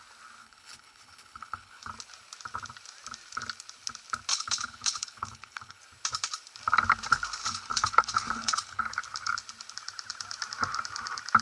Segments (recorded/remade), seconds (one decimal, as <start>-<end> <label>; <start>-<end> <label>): 0.0-0.4 recorded; 0.4-1.9 remade; 1.9-4.3 recorded; 4.3-5.8 remade; 5.8-7.4 recorded; 7.4-8.8 remade; 8.8-11.4 recorded

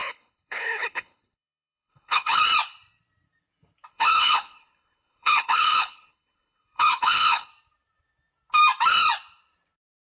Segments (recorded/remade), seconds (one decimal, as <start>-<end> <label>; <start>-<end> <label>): 0.0-2.4 remade; 2.4-3.9 recorded; 3.9-7.5 remade; 7.5-10.0 recorded

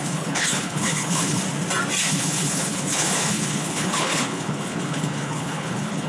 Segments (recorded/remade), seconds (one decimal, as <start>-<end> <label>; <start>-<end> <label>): 0.0-1.4 remade; 1.4-2.0 recorded; 2.0-6.1 remade

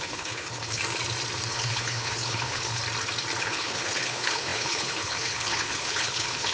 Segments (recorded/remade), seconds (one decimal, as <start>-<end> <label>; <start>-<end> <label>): 0.0-0.8 remade; 0.8-1.5 recorded; 1.5-2.8 remade; 2.8-3.4 recorded; 3.4-6.5 remade

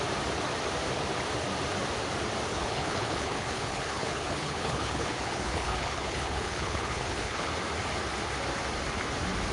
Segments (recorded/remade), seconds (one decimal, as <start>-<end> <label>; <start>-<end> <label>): 0.0-2.5 recorded; 2.5-7.5 remade; 7.5-9.5 recorded

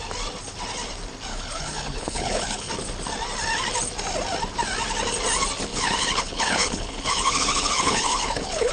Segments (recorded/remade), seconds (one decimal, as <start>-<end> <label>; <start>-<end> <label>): 0.0-1.3 recorded; 1.3-2.7 remade; 2.7-5.7 recorded; 5.7-8.7 remade

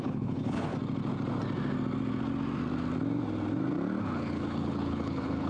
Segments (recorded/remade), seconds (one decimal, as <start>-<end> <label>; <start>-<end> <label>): 0.0-0.7 remade; 0.7-4.0 recorded; 4.0-5.5 remade